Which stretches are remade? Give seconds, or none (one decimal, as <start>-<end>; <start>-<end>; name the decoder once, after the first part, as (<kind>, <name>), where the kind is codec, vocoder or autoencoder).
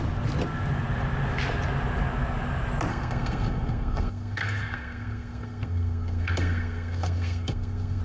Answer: 2.9-8.0 (codec, SNAC)